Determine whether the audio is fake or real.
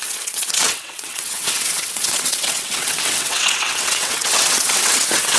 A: fake